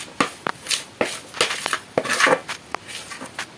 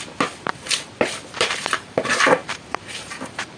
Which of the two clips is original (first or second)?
first